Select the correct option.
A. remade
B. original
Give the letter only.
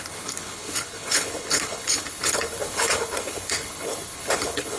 A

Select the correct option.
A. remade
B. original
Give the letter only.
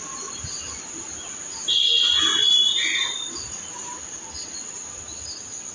B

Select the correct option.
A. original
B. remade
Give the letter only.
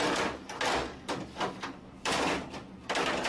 A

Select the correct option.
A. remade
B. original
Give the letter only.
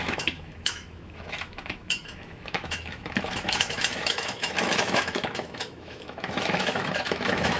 A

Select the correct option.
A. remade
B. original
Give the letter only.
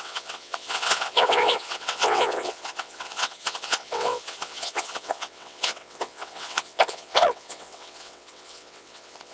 A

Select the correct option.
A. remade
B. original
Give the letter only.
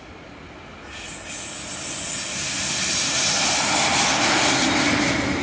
B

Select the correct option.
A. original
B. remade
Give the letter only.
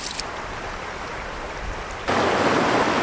A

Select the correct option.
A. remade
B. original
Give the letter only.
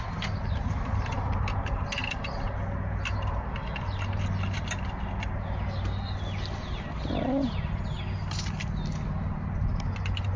B